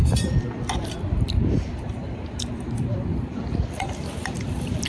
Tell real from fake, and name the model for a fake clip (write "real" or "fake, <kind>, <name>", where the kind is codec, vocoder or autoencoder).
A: fake, vocoder, BigVGAN v2